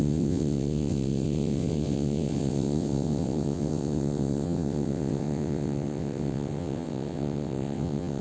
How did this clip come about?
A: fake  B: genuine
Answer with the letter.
A